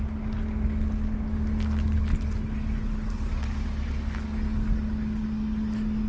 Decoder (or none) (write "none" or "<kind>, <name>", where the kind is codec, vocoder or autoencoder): none